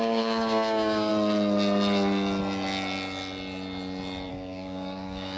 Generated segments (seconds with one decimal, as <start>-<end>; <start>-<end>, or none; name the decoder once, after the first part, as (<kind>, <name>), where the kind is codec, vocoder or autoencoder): 0.0-1.1 (codec, DAC); 4.3-5.4